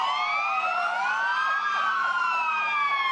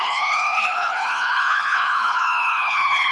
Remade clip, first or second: second